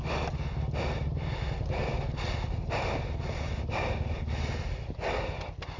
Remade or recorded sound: recorded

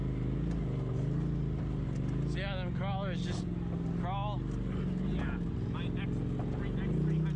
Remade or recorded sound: recorded